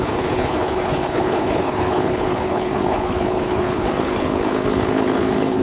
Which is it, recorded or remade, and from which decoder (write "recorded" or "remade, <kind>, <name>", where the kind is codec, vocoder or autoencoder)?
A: remade, codec, HILCodec